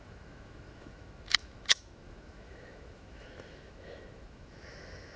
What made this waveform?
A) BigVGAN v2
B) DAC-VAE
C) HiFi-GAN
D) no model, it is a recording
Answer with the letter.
B